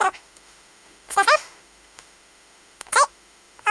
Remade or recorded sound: remade